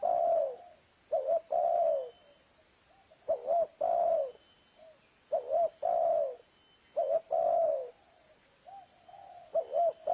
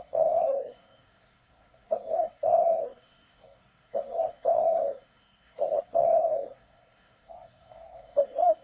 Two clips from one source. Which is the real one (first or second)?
first